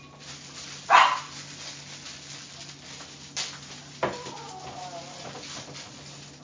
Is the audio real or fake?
real